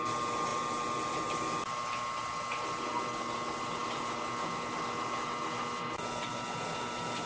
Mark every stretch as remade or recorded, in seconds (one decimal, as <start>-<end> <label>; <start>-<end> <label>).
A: 0.0-7.3 recorded